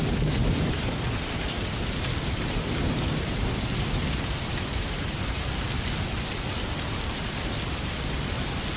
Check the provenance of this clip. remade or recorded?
recorded